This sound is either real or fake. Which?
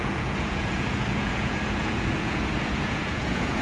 fake